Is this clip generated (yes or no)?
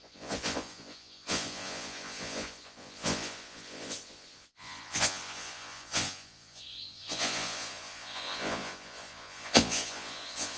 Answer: yes